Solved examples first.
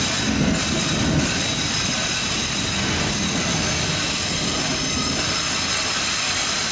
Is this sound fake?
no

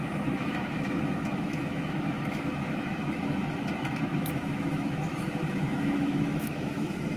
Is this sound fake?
yes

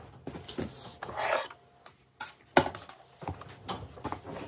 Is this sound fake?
no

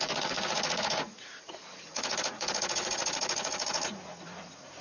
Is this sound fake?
yes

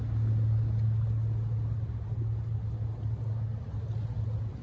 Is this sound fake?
no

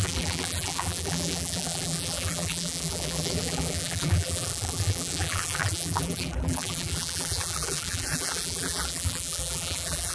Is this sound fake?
yes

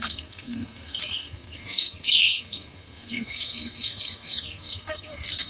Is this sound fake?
yes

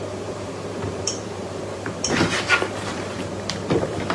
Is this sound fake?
yes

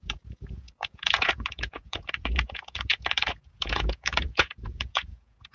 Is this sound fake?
yes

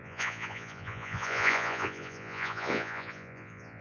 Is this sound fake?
yes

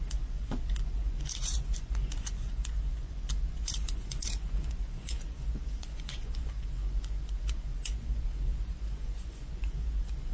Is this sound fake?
yes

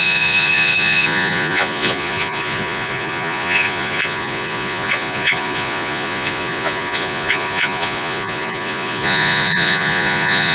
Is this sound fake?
yes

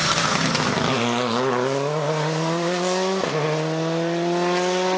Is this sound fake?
no